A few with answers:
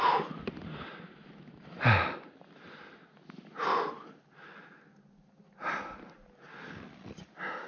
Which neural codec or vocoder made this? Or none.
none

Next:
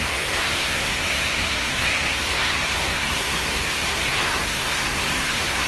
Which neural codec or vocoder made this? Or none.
codec, SNAC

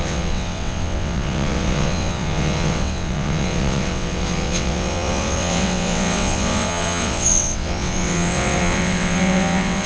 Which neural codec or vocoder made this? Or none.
vocoder, WaveNeXt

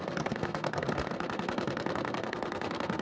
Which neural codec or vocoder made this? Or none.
codec, SNAC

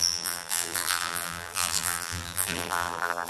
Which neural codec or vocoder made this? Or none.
vocoder, BigVGAN v2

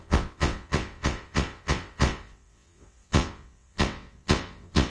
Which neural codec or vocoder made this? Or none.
vocoder, WaveNeXt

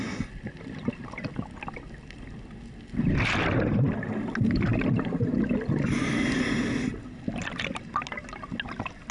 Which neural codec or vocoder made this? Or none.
none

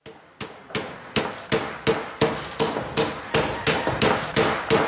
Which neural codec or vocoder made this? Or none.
none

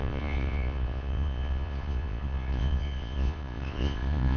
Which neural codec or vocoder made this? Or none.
vocoder, Vocos